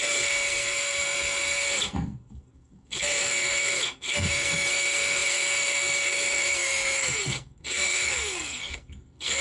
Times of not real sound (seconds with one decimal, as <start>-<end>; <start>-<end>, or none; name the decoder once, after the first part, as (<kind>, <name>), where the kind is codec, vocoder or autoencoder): 0.0-9.4 (codec, SNAC)